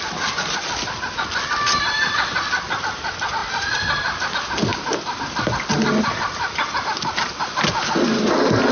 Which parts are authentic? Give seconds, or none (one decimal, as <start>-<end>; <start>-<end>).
0.0-8.7

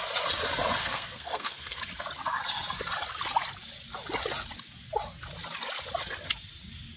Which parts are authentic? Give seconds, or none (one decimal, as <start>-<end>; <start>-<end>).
0.0-0.8; 1.8-7.0

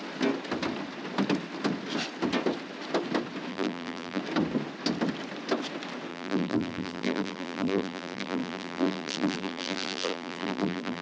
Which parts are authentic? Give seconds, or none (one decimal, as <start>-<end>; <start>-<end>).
0.0-3.5; 4.2-6.1

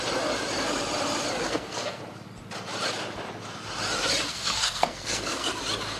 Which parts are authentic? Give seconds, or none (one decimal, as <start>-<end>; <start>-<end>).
0.0-1.4; 2.0-4.3; 5.6-6.0

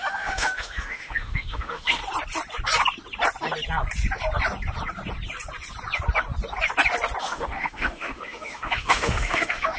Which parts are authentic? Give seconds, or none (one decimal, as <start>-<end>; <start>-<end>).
2.0-7.2